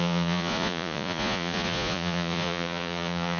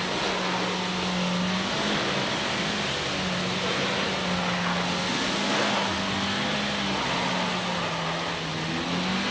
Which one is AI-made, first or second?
first